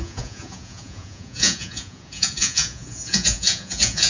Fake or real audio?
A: fake